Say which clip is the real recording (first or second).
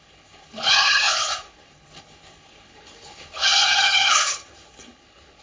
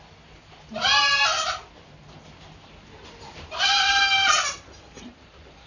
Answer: second